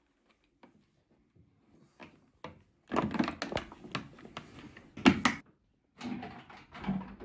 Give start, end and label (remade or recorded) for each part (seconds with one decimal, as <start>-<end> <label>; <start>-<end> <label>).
0.0-7.2 recorded